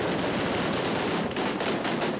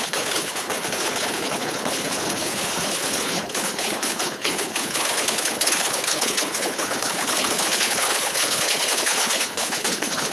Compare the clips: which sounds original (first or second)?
first